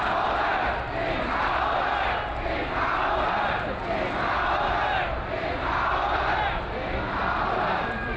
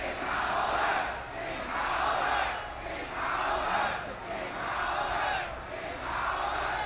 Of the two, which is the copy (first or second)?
first